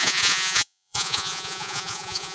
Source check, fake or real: fake